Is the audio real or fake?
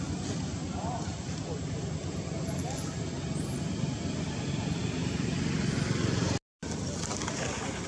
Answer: real